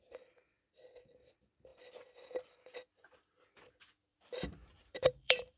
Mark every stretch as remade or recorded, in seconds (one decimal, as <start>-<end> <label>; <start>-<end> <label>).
0.0-4.1 recorded; 4.1-5.6 remade